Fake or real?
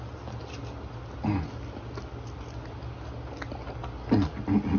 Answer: real